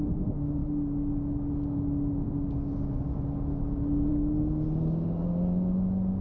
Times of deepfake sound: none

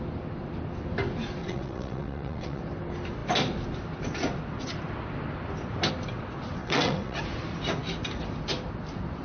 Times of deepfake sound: 1.4-2.6 (vocoder, WaveNeXt); 6.6-7.2

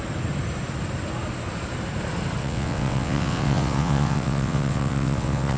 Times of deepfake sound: 2.4-5.6 (vocoder, WaveNeXt)

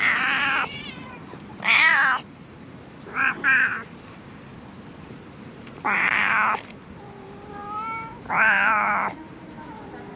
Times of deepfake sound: 0.0-4.5 (vocoder, BigVGAN v2); 5.1-10.2